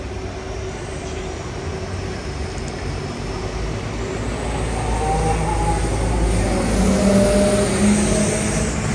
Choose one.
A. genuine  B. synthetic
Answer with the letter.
A